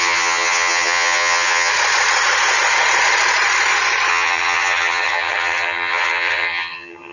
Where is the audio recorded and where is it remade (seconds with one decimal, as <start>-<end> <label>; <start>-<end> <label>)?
0.0-1.7 remade; 1.7-4.1 recorded; 4.1-7.1 remade